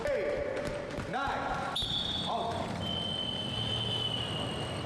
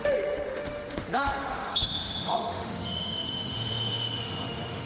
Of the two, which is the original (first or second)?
first